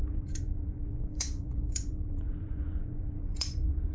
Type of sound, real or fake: fake